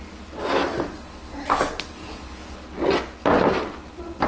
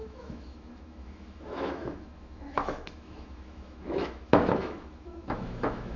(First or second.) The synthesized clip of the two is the second